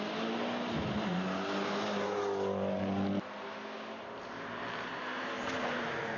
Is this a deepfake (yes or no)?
no